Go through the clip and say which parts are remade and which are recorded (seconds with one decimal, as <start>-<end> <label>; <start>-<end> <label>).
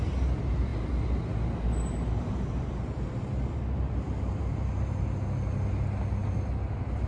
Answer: 0.0-7.1 recorded